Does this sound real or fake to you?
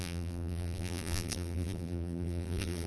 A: fake